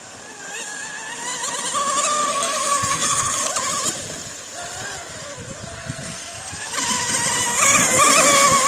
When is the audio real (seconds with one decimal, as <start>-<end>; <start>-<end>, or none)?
0.0-2.3; 3.5-5.8; 6.5-8.7